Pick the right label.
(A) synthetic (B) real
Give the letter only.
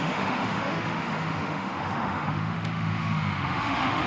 A